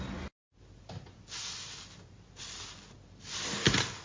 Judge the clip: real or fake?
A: real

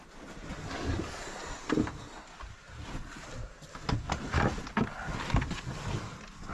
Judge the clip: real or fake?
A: real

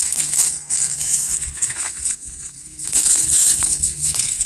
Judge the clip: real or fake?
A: fake